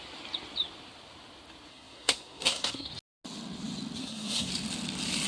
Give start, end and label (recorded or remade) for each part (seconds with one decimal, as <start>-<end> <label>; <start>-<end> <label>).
0.0-1.7 recorded; 1.7-2.9 remade; 2.9-4.0 recorded; 4.0-4.5 remade; 4.5-5.3 recorded